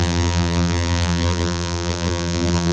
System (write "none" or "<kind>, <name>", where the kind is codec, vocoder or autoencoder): vocoder, BigVGAN v2